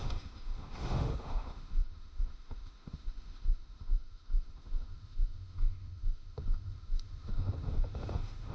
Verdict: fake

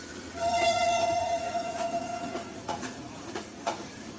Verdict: fake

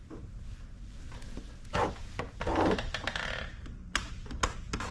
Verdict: real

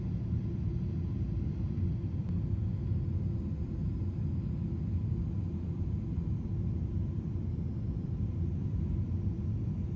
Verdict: real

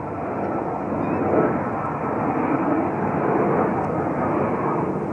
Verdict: real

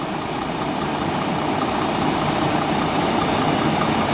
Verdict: real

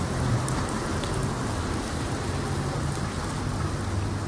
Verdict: real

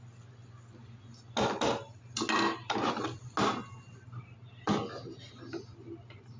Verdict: real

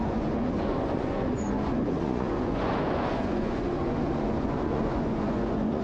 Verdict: fake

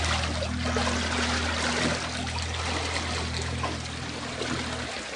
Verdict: real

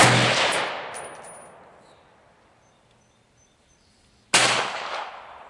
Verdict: real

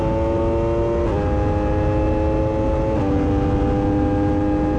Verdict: real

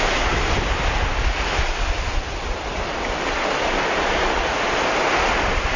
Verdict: real